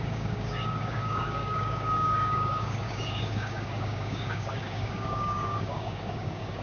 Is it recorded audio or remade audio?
remade